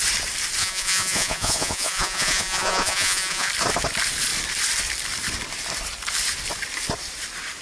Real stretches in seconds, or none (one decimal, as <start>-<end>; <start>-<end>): 0.0-0.6; 3.5-7.6